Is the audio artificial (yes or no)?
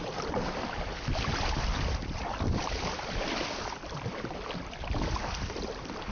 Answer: yes